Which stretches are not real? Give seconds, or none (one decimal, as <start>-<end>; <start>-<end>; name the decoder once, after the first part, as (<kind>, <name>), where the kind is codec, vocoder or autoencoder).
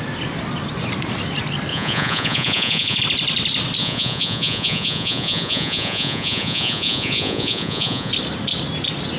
1.7-3.0 (vocoder, Vocos); 3.8-8.1